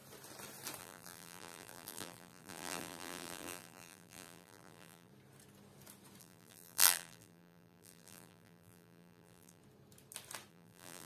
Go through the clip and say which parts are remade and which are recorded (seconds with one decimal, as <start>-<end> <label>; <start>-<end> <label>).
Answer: 0.0-0.8 recorded; 0.8-5.1 remade; 5.1-6.2 recorded; 6.2-9.6 remade; 9.6-10.5 recorded; 10.5-11.1 remade